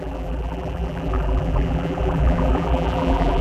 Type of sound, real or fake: fake